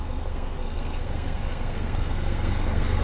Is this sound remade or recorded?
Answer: remade